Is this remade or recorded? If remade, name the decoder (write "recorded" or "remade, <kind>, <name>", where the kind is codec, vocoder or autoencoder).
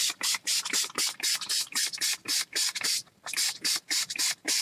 remade, vocoder, BigVGAN v2